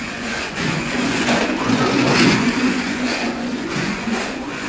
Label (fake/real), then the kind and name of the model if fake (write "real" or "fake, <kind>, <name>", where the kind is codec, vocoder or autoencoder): fake, vocoder, Vocos